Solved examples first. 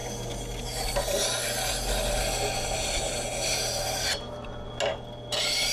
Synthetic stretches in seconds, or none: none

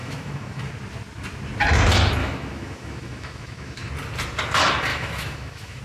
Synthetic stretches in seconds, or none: 0.0-0.7 (autoencoder, DAC-VAE); 2.2-3.9; 4.9-5.8

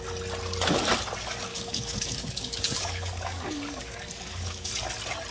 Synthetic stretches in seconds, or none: 1.5-4.7 (codec, DAC)

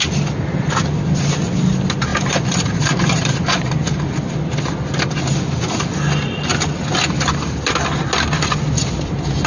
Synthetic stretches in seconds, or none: 2.1-4.3 (vocoder, BigVGAN v2)

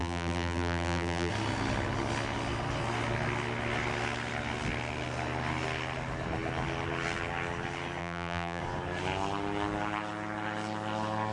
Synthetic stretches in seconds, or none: 0.0-1.3 (vocoder, BigVGAN v2); 8.0-8.6